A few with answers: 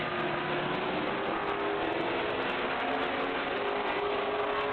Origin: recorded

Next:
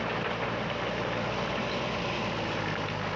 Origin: recorded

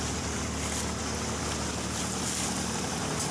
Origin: recorded